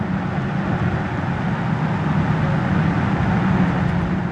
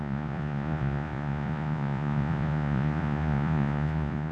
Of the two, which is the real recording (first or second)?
first